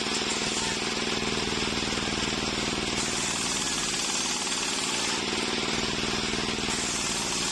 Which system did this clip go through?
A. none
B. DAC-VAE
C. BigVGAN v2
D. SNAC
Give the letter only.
A